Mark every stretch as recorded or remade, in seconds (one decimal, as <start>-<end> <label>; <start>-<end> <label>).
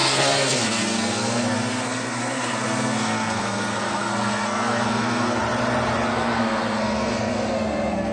0.0-5.4 remade; 5.4-6.1 recorded; 6.1-8.1 remade